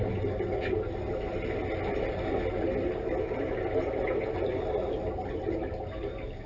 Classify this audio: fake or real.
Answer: real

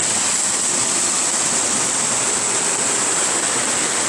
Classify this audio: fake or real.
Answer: real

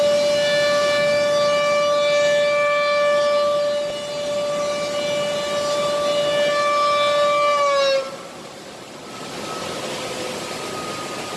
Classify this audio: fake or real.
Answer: real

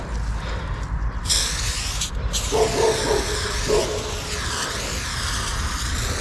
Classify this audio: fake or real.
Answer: real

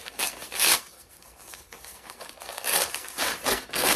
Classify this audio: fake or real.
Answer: fake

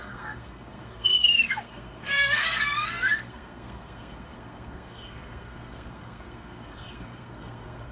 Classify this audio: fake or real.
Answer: fake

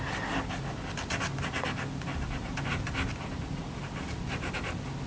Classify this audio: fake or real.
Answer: real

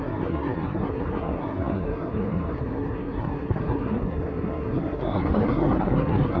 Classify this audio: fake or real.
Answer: fake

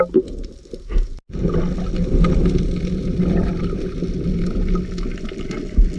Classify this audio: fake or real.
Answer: real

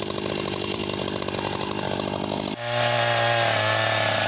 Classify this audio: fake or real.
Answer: real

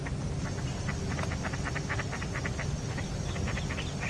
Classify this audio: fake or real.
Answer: real